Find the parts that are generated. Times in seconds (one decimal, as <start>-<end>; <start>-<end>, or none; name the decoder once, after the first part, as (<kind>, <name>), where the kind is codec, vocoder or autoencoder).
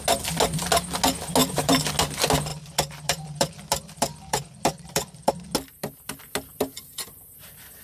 1.4-1.9 (vocoder, BigVGAN v2); 2.5-5.3